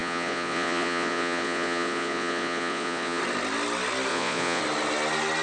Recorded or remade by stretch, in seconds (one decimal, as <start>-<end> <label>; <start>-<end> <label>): 0.0-3.2 remade; 3.2-4.1 recorded; 4.1-4.6 remade; 4.6-5.4 recorded